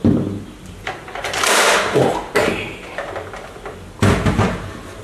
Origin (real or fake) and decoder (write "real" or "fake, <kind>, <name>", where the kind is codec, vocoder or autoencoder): real